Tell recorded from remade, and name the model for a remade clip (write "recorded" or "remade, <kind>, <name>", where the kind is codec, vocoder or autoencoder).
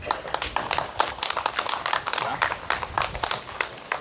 recorded